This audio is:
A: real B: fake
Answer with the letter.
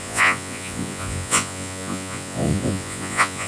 B